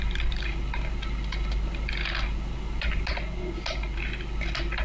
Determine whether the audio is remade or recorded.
recorded